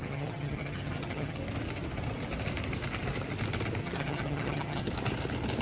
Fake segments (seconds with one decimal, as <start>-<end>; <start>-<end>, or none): 0.0-1.4; 3.8-4.9